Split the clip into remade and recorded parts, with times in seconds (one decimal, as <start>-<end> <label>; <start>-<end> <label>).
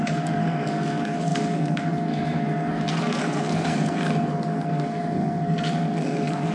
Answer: 0.0-6.5 remade